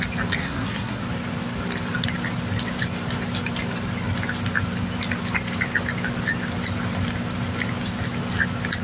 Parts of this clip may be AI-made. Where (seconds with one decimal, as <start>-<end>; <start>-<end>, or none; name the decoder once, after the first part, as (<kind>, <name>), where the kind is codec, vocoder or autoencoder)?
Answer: 0.4-1.0 (codec, SNAC)